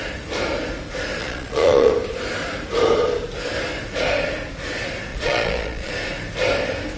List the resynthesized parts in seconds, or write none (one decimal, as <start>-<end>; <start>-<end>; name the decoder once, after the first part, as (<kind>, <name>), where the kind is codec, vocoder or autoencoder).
1.2-1.9 (vocoder, Vocos); 5.1-5.9